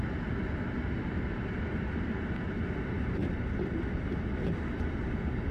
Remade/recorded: recorded